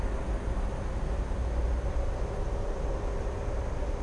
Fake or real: real